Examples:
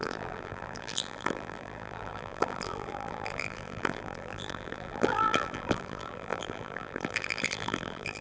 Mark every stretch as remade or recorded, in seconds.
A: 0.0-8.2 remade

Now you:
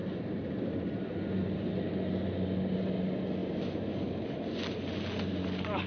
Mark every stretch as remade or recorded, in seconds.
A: 0.0-1.7 remade; 1.7-5.9 recorded

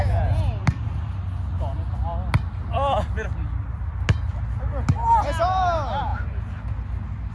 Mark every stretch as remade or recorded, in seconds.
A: 0.0-7.3 recorded

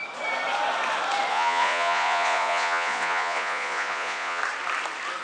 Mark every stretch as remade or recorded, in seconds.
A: 0.0-1.3 recorded; 1.3-4.4 remade; 4.4-5.2 recorded

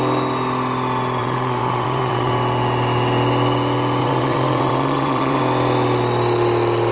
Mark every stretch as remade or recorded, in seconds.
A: 0.0-1.2 recorded; 1.2-2.3 remade; 2.3-4.0 recorded; 4.0-5.4 remade; 5.4-6.9 recorded

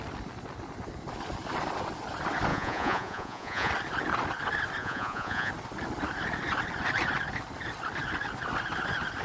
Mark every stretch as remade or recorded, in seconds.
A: 0.0-2.5 recorded; 2.5-3.7 remade; 3.7-4.8 recorded; 4.8-5.5 remade; 5.5-9.2 recorded

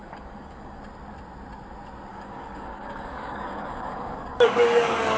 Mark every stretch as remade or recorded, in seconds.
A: 0.0-0.8 remade; 0.8-2.1 recorded; 2.1-5.2 remade